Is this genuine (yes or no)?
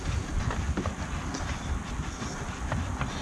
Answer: yes